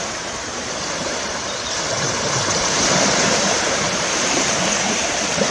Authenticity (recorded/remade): remade